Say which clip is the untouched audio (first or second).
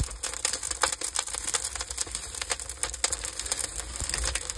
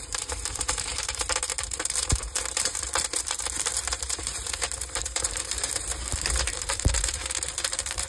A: first